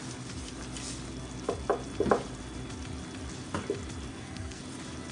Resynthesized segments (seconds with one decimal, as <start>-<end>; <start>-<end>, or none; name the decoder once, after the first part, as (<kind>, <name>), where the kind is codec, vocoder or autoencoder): 4.1-4.6 (codec, SNAC)